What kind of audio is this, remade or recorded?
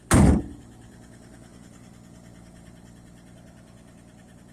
recorded